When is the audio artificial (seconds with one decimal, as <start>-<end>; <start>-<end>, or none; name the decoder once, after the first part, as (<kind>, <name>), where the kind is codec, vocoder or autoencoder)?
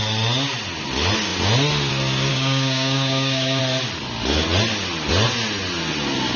2.3-3.6 (codec, DAC)